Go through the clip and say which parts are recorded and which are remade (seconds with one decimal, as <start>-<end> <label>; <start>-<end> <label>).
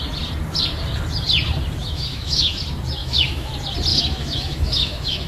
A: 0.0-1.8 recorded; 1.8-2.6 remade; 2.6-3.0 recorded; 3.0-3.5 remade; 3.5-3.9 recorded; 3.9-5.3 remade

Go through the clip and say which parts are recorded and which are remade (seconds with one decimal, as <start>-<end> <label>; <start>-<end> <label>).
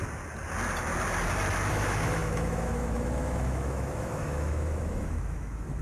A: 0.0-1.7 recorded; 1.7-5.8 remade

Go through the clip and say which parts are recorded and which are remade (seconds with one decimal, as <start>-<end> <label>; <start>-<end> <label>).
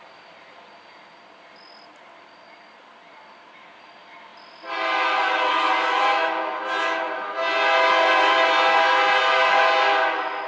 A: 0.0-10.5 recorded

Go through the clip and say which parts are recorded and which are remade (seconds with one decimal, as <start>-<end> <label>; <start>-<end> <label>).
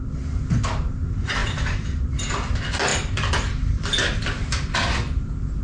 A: 0.0-5.6 recorded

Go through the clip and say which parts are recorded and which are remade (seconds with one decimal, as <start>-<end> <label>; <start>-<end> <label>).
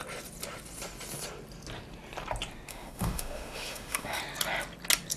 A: 0.0-2.7 recorded; 2.7-4.2 remade; 4.2-5.2 recorded